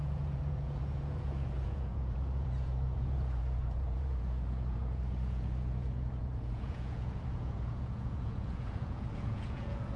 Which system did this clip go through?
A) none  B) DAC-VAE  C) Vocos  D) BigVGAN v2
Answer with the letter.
C